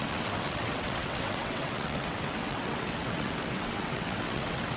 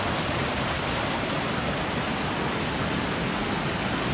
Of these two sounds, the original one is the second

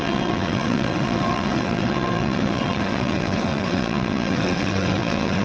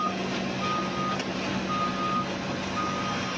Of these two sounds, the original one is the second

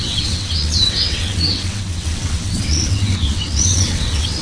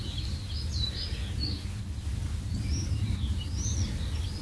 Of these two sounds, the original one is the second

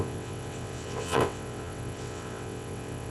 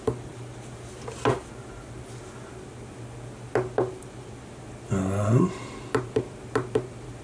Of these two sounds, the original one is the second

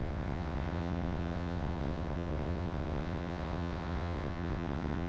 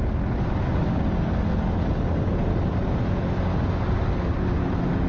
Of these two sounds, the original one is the second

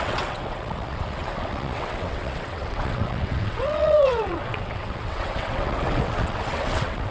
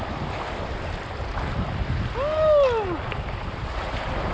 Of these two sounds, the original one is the second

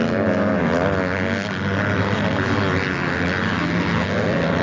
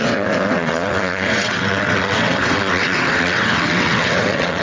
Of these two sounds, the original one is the first